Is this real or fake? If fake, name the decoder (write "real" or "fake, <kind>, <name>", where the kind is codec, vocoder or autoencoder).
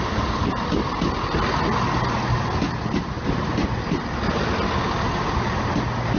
real